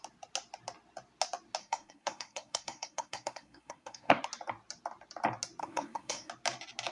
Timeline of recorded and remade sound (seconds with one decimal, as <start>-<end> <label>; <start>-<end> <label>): 0.0-1.6 recorded; 1.6-4.2 remade; 4.2-5.6 recorded; 5.6-6.3 remade; 6.3-6.9 recorded